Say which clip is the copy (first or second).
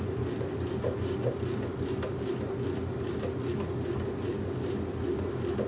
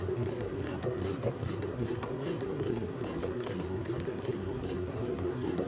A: second